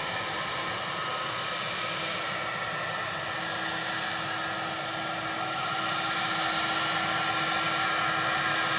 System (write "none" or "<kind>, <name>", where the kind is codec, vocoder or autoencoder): none